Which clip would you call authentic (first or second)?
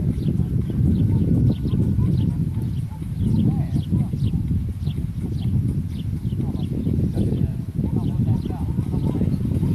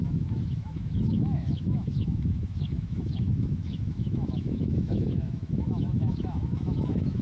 first